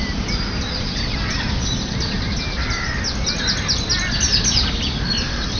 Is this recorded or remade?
recorded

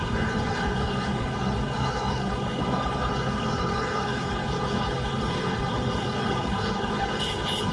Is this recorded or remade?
remade